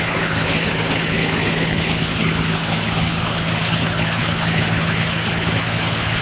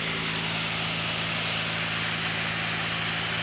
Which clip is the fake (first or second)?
first